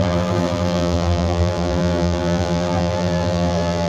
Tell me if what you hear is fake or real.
fake